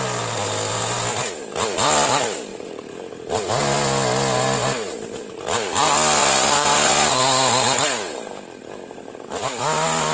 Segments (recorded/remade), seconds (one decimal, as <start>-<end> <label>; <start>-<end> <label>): 0.0-6.2 recorded; 6.2-7.2 remade; 7.2-10.1 recorded